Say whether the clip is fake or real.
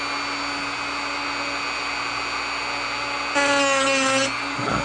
real